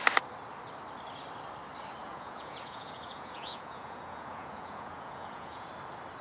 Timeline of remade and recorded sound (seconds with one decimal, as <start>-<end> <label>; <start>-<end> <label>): 0.0-2.0 recorded; 2.0-5.7 remade; 5.7-6.2 recorded